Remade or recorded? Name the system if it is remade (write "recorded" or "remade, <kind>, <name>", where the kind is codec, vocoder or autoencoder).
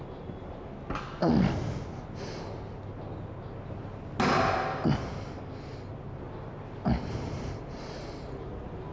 recorded